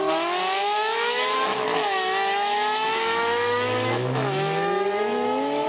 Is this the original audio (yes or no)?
no